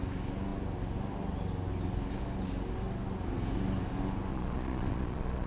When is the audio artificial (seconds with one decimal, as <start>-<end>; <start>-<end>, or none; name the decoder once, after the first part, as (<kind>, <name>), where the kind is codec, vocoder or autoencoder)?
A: 4.3-5.5 (vocoder, Vocos)